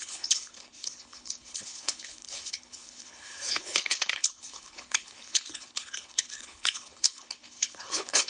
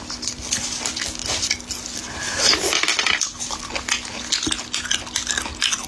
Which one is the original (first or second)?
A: second